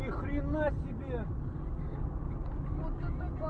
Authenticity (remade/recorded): recorded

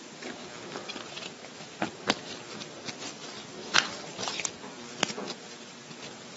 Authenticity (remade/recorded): recorded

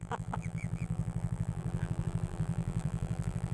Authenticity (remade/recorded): remade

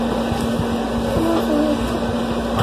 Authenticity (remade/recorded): recorded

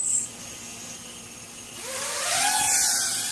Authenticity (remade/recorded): recorded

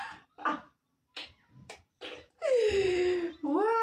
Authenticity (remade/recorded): remade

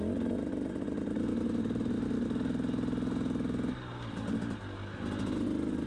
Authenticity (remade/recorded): recorded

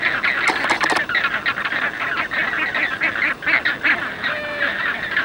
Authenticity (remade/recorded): recorded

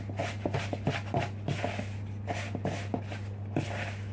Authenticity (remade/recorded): recorded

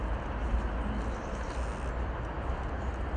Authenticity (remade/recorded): recorded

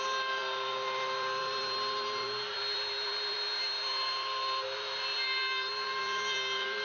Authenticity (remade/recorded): remade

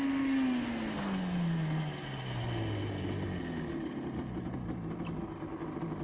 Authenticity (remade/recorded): recorded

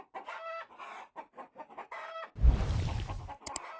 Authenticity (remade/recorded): recorded